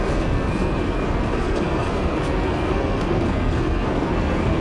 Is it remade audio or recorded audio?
remade